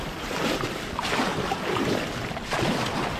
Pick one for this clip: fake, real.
real